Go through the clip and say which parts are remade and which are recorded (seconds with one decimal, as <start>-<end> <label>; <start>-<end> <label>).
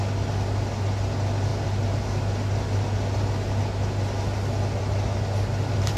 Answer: 0.0-6.0 recorded